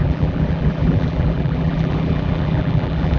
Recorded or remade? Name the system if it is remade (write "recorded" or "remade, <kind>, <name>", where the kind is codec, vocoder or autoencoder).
remade, vocoder, BigVGAN v2